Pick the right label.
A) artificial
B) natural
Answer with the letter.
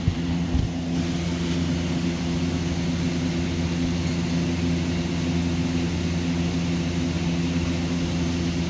B